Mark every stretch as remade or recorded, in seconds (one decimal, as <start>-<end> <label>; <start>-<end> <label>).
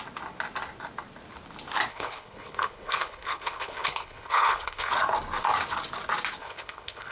0.0-1.9 recorded; 1.9-4.9 remade; 4.9-6.4 recorded; 6.4-7.1 remade